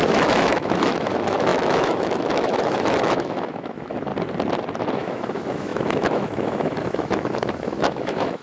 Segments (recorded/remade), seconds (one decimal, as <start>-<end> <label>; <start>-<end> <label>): 0.0-4.1 remade; 4.1-4.9 recorded; 4.9-8.4 remade